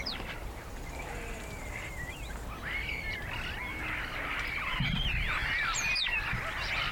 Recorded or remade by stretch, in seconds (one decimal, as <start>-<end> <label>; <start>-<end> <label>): 0.0-0.4 recorded; 0.4-1.9 remade; 1.9-6.9 recorded